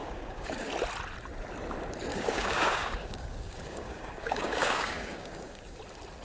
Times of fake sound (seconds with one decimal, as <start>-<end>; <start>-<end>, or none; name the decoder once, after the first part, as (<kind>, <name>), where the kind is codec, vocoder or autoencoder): 0.0-0.7 (codec, DAC); 2.1-5.8